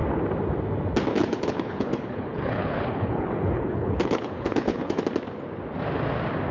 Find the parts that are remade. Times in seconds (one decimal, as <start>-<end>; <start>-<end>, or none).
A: 1.1-5.0